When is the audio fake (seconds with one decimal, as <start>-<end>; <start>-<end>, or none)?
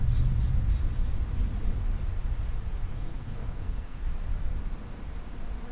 2.9-4.1